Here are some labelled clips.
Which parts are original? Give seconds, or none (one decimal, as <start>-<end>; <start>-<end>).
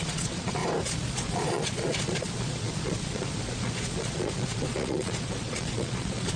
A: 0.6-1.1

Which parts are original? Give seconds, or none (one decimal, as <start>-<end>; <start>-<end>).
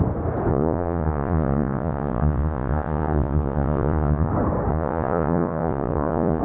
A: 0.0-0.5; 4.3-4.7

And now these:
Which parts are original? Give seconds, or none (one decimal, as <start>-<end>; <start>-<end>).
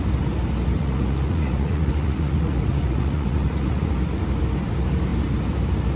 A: 0.0-0.8; 3.9-6.0